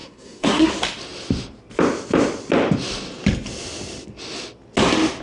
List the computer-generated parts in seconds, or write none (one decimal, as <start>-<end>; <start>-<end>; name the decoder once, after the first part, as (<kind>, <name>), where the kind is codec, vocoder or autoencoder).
0.0-0.7 (codec, SNAC)